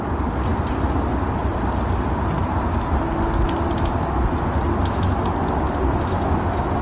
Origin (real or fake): real